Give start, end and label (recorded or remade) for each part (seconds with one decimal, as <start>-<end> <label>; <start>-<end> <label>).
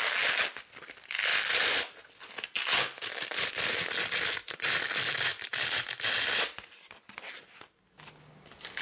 0.0-8.8 recorded